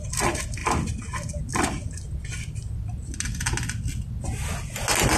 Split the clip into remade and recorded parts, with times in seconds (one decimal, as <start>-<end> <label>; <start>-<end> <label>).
0.0-5.2 recorded